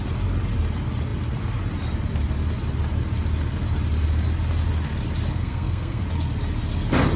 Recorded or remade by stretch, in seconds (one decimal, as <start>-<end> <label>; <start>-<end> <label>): 0.0-5.3 recorded; 5.3-6.0 remade; 6.0-7.2 recorded

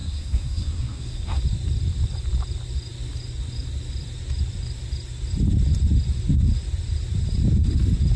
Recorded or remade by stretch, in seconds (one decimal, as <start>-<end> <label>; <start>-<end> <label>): 0.0-1.4 remade; 1.4-8.2 recorded